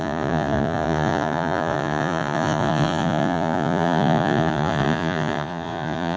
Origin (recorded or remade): remade